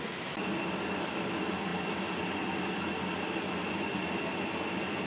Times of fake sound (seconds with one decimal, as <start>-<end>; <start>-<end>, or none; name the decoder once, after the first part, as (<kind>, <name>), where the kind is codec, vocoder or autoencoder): none

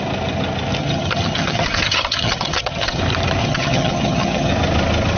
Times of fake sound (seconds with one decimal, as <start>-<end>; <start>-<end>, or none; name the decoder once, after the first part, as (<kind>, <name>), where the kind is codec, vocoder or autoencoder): 0.8-3.0 (vocoder, HiFi-GAN); 3.4-4.5

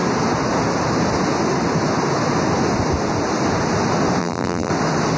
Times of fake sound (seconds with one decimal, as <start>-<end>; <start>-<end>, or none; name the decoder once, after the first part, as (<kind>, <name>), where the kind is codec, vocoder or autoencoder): 4.2-4.7 (vocoder, BigVGAN v2)

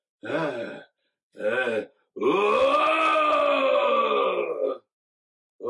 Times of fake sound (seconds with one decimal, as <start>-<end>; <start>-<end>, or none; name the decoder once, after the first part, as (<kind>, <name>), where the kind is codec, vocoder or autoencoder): none

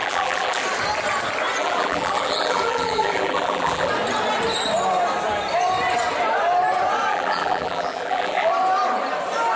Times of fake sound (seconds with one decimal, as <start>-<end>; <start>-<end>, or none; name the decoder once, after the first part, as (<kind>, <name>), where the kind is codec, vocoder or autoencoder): 0.0-0.6 (vocoder, BigVGAN v2); 1.6-3.9; 7.1-8.5

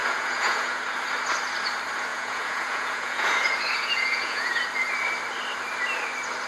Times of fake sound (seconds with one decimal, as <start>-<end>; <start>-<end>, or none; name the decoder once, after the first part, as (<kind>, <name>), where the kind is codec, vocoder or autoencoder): 0.0-0.8 (vocoder, Vocos); 2.1-4.6

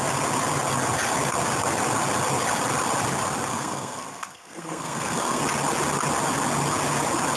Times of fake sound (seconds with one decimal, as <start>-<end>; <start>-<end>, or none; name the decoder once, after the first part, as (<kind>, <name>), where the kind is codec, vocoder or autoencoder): 3.5-5.4 (codec, SNAC)